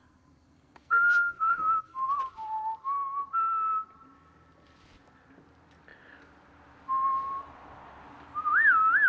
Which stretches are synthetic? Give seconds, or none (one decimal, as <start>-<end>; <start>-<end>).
0.0-2.2